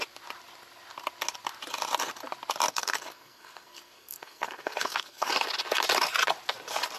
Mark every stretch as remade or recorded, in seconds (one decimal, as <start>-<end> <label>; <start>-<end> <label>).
0.0-2.7 recorded; 2.7-5.3 remade; 5.3-7.0 recorded